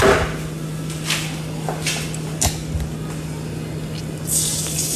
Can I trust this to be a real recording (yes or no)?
yes